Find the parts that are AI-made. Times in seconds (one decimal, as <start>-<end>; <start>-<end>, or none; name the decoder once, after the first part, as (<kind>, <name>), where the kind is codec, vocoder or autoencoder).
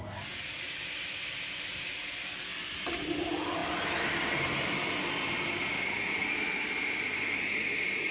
none